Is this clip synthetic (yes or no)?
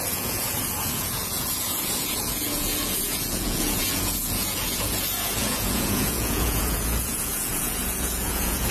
yes